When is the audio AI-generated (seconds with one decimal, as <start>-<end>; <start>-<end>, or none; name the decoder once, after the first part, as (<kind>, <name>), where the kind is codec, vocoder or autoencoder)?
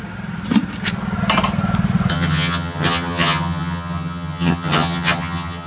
2.1-5.7 (vocoder, HiFi-GAN)